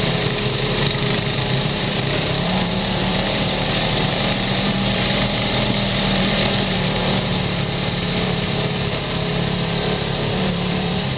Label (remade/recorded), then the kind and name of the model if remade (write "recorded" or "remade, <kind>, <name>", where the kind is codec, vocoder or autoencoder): remade, vocoder, BigVGAN v2